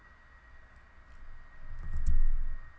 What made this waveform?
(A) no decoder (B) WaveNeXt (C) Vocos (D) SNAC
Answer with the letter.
A